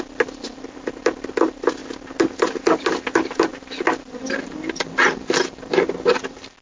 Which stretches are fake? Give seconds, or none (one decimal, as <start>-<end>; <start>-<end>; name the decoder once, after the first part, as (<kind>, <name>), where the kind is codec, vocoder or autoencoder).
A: none